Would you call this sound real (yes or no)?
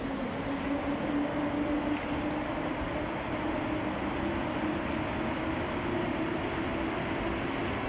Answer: yes